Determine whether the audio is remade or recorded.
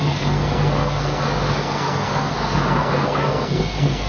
remade